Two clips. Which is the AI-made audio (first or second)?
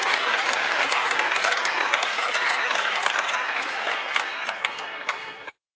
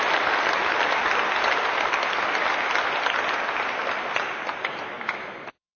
first